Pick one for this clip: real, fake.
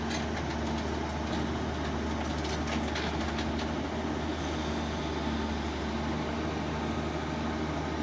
real